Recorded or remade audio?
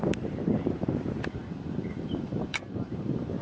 remade